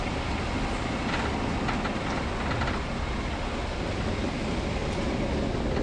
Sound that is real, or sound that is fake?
real